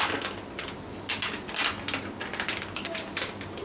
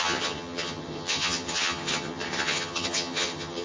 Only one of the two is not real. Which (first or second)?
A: second